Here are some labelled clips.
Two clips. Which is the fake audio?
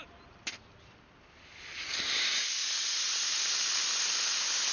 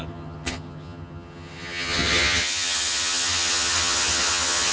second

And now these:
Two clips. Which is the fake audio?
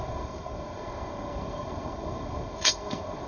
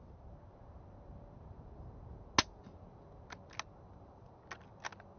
first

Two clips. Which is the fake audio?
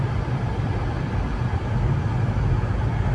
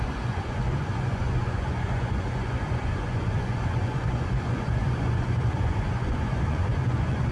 second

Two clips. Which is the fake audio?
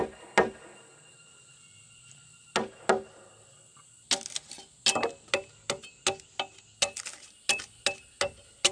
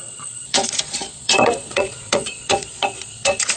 second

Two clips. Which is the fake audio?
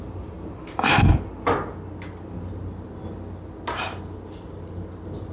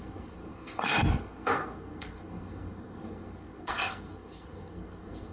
second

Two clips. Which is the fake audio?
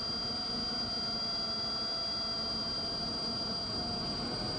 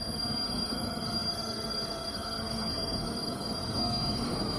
second